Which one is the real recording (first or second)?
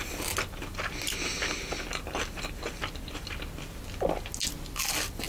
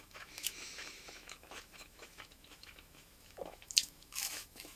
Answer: first